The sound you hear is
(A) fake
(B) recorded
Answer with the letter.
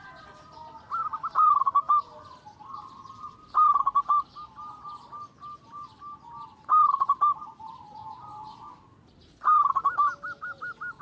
B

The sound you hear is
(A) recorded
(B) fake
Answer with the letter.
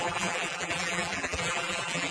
B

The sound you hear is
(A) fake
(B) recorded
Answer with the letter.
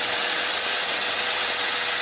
A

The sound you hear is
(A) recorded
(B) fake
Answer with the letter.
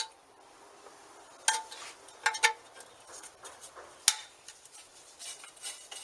A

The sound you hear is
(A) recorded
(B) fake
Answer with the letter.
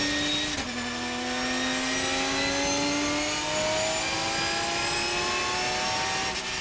A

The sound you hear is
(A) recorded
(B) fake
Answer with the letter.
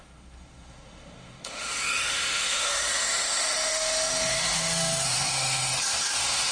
B